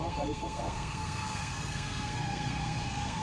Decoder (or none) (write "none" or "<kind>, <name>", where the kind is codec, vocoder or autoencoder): codec, SNAC